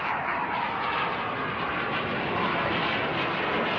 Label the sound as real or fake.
real